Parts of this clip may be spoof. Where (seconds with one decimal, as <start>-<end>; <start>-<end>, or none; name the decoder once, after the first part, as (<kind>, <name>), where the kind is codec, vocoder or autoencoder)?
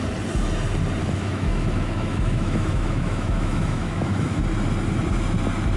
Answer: 1.0-4.4 (autoencoder, DAC-VAE)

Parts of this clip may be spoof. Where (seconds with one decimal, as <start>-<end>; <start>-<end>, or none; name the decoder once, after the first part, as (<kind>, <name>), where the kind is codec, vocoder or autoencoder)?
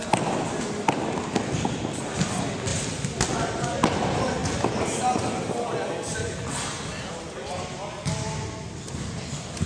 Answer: none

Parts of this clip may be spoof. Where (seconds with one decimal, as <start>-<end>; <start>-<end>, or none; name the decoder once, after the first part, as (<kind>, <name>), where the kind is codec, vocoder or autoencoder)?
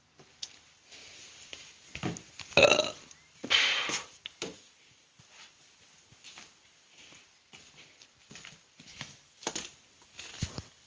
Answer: 8.9-9.5 (autoencoder, DAC-VAE)